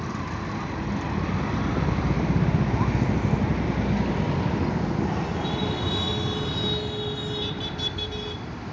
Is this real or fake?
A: real